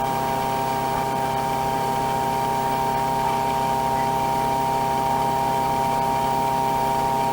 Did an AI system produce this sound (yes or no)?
no